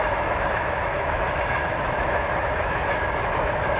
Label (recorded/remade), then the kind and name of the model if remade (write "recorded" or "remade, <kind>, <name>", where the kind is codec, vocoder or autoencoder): remade, autoencoder, DAC-VAE